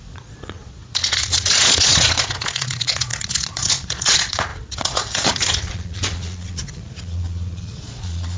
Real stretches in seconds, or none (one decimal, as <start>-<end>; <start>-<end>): none